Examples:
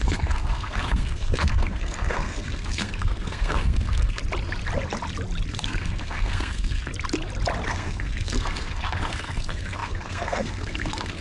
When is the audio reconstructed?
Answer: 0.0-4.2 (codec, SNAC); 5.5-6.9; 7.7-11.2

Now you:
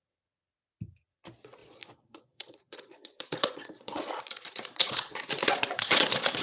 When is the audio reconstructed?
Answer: 0.0-0.5 (vocoder, Vocos); 1.1-6.4

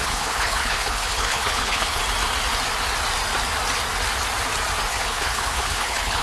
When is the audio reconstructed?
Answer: 0.0-2.0 (codec, HILCodec); 4.9-6.2

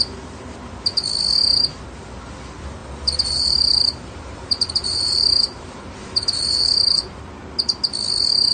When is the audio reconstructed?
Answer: 2.8-7.3 (vocoder, BigVGAN v2)

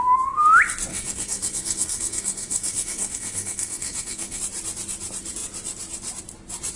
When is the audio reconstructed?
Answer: 0.9-4.4 (codec, SNAC)

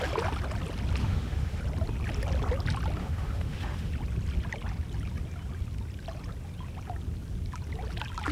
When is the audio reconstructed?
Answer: 1.0-1.6 (autoencoder, DAC-VAE); 3.0-3.9

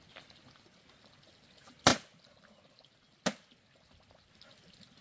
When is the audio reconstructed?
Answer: none